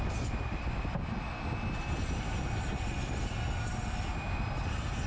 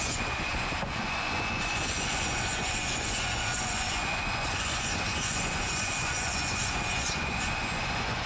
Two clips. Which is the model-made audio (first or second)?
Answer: second